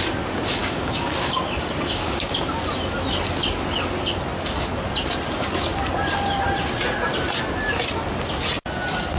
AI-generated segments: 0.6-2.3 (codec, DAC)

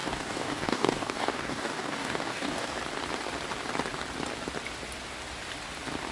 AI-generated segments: 0.0-2.8 (codec, DAC)

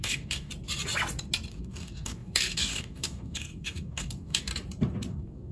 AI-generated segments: 0.0-0.5 (codec, DAC); 1.5-4.5; 5.1-5.5

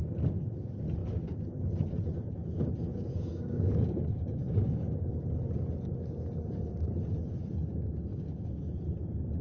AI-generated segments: 1.0-1.5 (codec, DAC); 2.9-5.2; 8.1-8.8

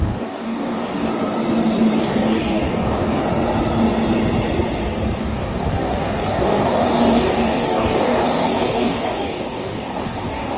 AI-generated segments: 0.0-1.1 (codec, DAC); 2.0-3.2; 5.2-10.6

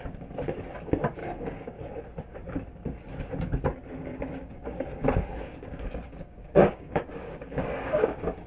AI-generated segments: 1.2-1.9 (codec, DAC); 4.1-7.9

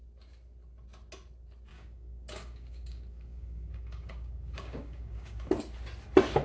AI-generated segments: 1.7-5.5 (codec, DAC)